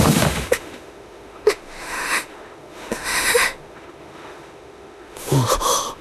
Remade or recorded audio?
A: remade